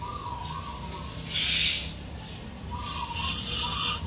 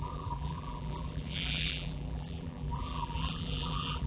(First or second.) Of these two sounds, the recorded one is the first